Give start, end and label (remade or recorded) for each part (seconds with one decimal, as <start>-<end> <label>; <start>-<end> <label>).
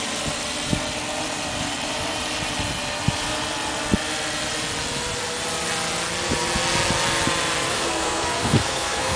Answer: 0.0-7.7 recorded; 7.7-9.2 remade